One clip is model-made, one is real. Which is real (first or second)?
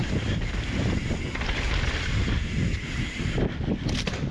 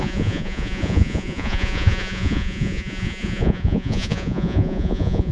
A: first